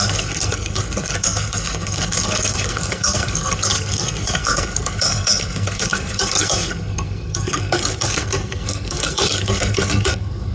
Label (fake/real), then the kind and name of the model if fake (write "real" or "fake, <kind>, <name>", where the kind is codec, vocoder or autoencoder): fake, codec, SNAC